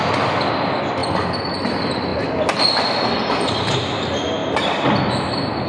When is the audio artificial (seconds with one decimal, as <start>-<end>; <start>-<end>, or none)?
none